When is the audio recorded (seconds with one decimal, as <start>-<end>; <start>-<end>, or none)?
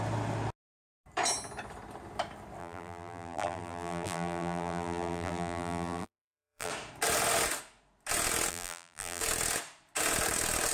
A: 0.0-2.6; 6.7-8.5; 9.2-10.7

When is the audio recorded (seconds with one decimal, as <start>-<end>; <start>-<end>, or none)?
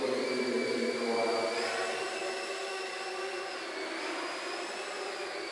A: 0.0-2.2; 2.9-5.5